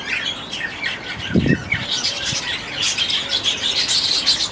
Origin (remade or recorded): recorded